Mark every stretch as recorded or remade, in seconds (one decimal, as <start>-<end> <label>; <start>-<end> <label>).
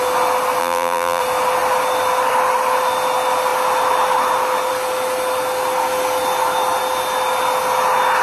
0.0-0.6 recorded; 0.6-1.2 remade; 1.2-8.2 recorded